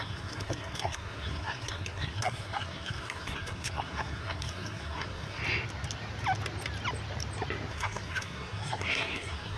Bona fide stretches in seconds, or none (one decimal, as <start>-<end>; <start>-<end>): 5.4-7.7